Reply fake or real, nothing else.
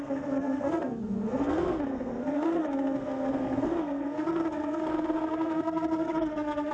fake